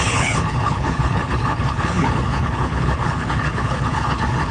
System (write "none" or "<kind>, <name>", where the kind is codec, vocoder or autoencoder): codec, HILCodec